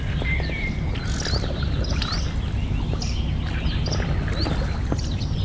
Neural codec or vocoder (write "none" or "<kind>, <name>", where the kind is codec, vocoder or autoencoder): none